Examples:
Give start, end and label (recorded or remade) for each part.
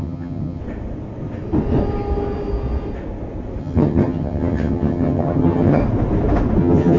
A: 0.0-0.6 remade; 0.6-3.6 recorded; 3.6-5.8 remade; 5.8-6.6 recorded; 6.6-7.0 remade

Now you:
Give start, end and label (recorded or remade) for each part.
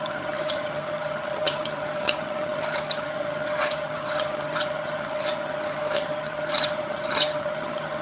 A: 0.0-8.0 remade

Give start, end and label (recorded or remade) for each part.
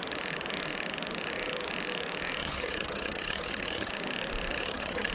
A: 0.0-2.4 recorded; 2.4-3.9 remade; 3.9-4.5 recorded; 4.5-5.1 remade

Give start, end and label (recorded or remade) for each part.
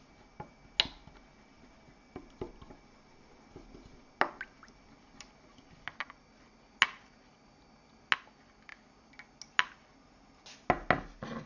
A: 0.0-11.5 recorded